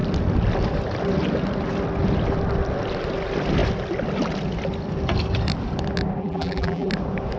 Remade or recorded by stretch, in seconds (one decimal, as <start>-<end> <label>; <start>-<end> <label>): 0.0-6.2 recorded; 6.2-6.9 remade; 6.9-7.4 recorded